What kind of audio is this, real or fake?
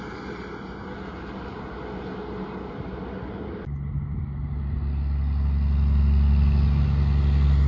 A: real